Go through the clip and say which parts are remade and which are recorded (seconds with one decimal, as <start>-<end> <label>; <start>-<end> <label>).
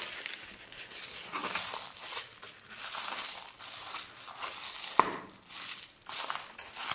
0.0-6.9 recorded